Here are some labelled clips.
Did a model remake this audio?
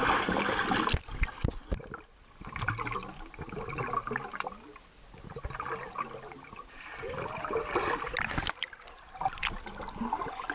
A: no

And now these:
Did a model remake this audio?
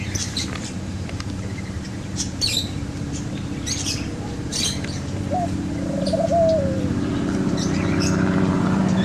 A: yes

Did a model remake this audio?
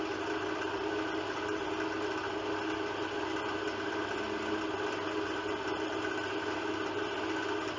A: no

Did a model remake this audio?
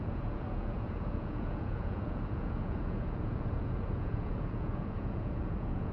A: yes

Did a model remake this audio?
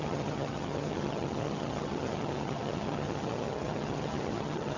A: yes